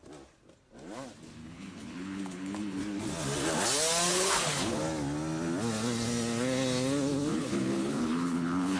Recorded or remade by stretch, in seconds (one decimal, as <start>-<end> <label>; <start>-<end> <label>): 0.0-1.4 recorded; 1.4-2.8 remade; 2.8-4.1 recorded; 4.1-4.8 remade; 4.8-7.3 recorded; 7.3-8.8 remade